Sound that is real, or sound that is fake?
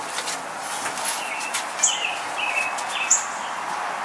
real